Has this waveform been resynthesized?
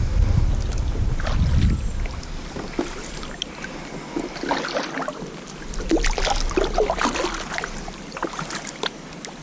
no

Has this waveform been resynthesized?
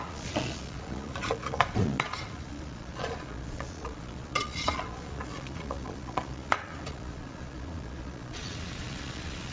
yes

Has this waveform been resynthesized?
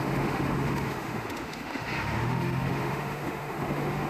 yes